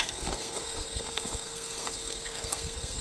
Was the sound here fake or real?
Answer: fake